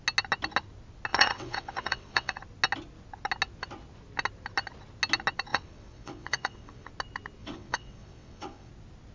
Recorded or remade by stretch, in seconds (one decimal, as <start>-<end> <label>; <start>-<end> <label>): 0.0-1.1 recorded; 1.1-2.4 remade; 2.4-5.5 recorded; 5.5-6.9 remade; 6.9-7.4 recorded; 7.4-8.7 remade; 8.7-9.1 recorded